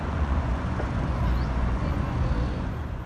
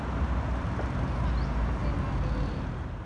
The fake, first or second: first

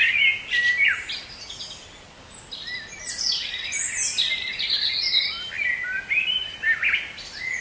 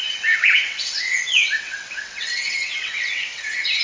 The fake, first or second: second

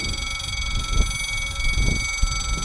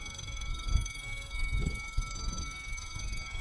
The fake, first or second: second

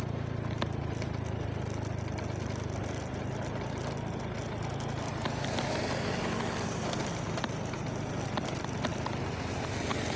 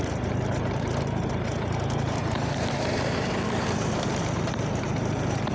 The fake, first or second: second